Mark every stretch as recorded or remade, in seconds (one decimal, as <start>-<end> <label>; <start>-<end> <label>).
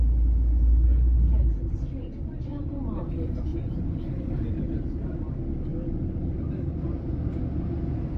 0.0-3.5 recorded; 3.5-4.6 remade; 4.6-8.2 recorded